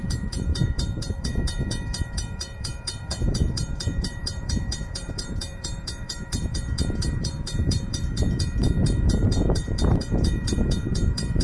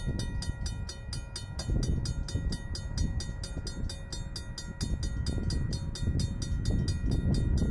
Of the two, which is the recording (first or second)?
second